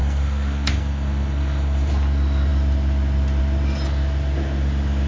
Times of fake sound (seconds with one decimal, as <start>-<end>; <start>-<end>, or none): 0.0-1.9